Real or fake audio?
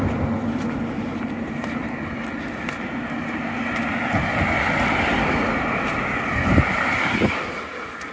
real